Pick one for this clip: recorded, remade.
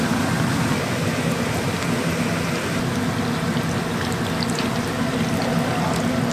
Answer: recorded